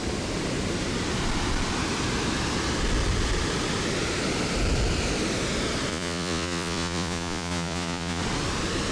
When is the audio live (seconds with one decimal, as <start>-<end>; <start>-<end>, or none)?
0.0-5.9; 8.2-8.9